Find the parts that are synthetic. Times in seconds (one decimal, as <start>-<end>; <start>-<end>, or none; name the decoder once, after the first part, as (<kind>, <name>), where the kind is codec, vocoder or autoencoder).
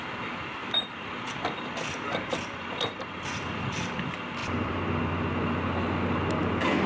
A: 0.6-3.1 (vocoder, BigVGAN v2); 4.4-5.0